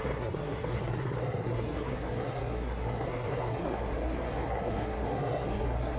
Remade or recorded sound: remade